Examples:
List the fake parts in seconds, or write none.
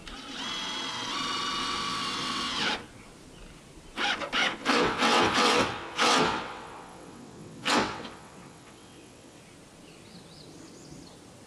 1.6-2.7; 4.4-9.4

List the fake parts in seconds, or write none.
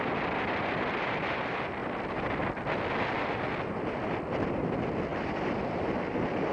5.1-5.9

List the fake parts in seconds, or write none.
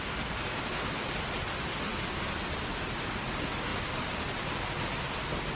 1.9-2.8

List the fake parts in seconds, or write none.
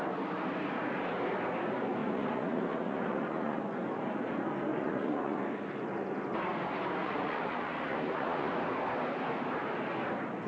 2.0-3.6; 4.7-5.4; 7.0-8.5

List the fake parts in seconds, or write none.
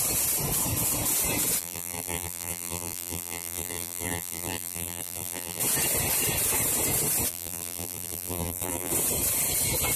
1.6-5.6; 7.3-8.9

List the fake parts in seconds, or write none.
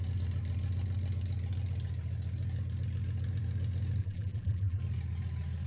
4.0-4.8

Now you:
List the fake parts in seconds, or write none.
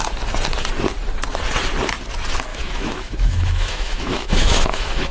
2.5-5.1